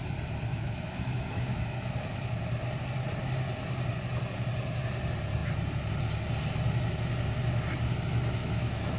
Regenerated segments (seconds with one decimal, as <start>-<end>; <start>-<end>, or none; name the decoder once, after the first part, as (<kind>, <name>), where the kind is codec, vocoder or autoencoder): 0.5-2.2 (autoencoder, DAC-VAE); 8.4-9.0